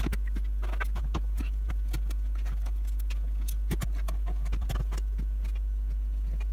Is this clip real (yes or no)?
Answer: yes